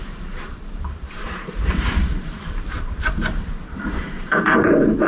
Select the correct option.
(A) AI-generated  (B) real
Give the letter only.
A